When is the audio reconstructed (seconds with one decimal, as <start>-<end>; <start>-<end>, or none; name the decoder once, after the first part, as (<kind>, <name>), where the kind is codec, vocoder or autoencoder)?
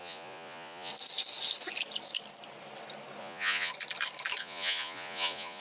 0.0-0.9 (vocoder, Vocos); 3.2-3.7; 4.4-5.6